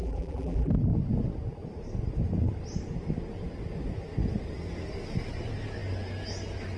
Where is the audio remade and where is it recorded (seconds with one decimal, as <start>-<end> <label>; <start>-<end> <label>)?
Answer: 0.0-0.7 remade; 0.7-6.8 recorded